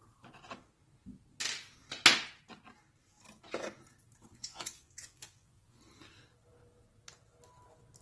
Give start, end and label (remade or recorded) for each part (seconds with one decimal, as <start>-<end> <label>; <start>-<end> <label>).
0.0-4.3 recorded; 4.3-5.8 remade; 5.8-8.0 recorded